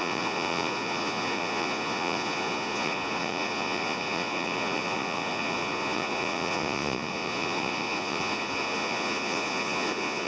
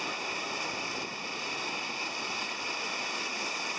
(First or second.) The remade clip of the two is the first